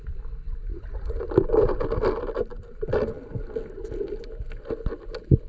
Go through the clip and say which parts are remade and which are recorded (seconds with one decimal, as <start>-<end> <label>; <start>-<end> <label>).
0.0-0.7 recorded; 0.7-1.3 remade; 1.3-5.5 recorded